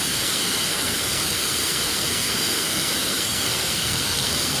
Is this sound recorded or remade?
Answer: remade